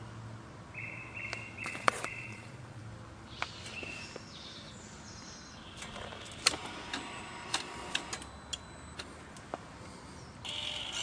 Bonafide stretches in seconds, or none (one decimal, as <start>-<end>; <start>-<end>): 0.0-1.6; 2.8-11.0